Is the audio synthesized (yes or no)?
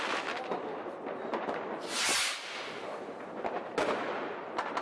no